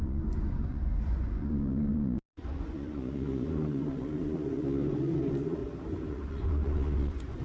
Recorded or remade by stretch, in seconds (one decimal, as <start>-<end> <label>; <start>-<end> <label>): 0.0-5.6 remade; 5.6-6.1 recorded; 6.1-7.4 remade